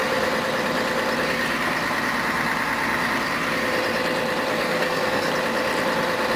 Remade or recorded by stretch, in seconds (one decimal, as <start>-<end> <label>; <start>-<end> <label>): 0.0-4.5 recorded; 4.5-5.3 remade; 5.3-6.4 recorded